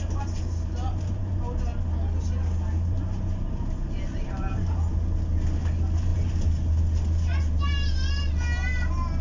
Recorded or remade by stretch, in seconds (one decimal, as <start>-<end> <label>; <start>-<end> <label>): 0.0-9.2 recorded